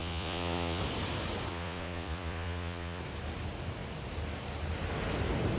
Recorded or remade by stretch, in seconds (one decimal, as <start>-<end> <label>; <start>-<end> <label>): 0.0-0.8 remade; 0.8-1.5 recorded; 1.5-3.0 remade; 3.0-5.6 recorded